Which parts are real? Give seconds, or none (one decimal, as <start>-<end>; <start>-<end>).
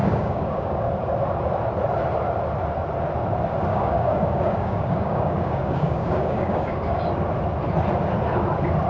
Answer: 0.9-3.7; 7.0-8.9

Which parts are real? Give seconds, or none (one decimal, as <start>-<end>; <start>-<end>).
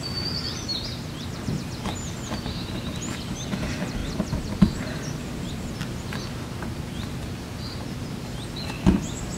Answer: 0.0-4.0; 8.0-9.4